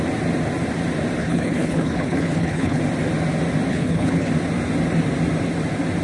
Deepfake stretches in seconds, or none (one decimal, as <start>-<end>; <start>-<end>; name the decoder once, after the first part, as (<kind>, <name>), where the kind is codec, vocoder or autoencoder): 1.2-2.8 (codec, HILCodec); 3.7-4.3